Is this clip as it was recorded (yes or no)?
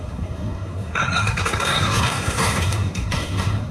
no